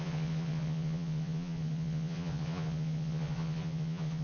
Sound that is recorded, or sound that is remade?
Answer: remade